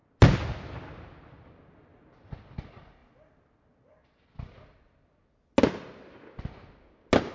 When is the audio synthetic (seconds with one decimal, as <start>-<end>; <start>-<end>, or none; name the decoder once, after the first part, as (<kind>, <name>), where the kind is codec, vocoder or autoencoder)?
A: none